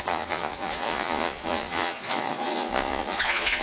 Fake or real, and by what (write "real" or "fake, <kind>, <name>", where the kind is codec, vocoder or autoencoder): fake, vocoder, Vocos